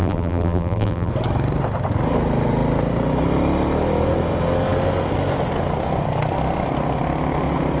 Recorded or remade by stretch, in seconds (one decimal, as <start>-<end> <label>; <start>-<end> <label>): 0.0-1.1 remade; 1.1-7.8 recorded